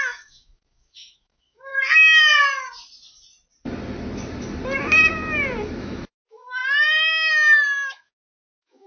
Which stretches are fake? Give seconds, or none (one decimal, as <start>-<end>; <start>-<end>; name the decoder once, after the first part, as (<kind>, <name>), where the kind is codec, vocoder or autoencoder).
0.0-1.7 (autoencoder, DAC-VAE); 5.8-6.6; 7.3-8.9